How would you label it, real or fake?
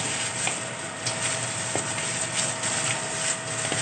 real